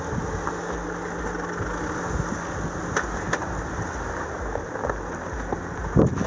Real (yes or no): yes